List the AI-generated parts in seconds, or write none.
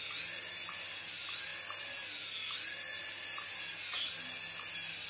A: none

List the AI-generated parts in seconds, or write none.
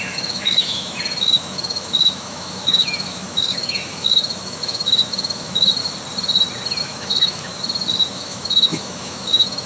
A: 0.0-5.8 (autoencoder, DAC-VAE); 6.8-7.5; 8.1-9.7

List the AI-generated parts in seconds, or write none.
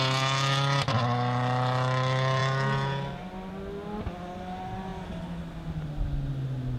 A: none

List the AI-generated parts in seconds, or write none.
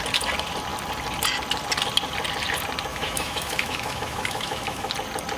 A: 2.9-4.9 (autoencoder, DAC-VAE)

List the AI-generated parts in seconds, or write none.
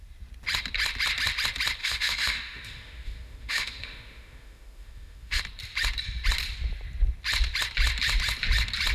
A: 1.8-5.4 (autoencoder, DAC-VAE)